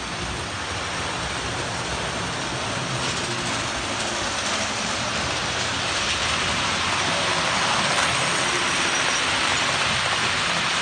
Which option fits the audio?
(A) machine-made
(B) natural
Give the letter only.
B